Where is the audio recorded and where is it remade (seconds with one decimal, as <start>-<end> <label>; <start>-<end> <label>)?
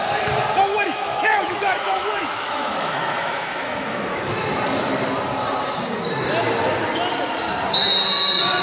0.0-0.7 recorded; 0.7-4.3 remade; 4.3-8.6 recorded